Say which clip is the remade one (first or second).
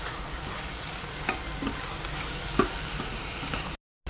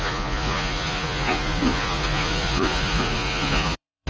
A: second